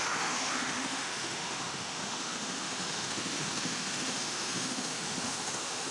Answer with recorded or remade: remade